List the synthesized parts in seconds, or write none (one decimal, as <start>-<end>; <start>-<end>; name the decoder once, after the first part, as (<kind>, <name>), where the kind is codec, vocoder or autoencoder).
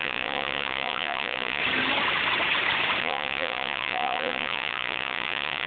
0.0-1.6 (vocoder, Vocos); 3.0-5.7